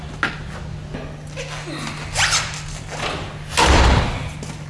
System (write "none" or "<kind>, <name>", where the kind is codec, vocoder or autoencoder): none